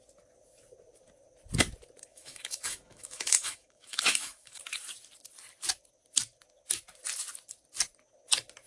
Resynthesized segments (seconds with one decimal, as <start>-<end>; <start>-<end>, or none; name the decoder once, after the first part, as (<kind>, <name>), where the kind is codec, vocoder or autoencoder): 2.1-4.6 (autoencoder, DAC-VAE)